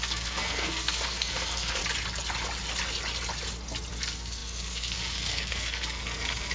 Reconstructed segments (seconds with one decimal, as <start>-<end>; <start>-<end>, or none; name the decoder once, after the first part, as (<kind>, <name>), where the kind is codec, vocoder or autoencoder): 0.0-1.8 (codec, SNAC); 3.9-6.5